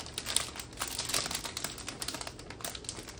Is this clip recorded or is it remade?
recorded